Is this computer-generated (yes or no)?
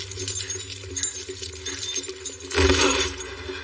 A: no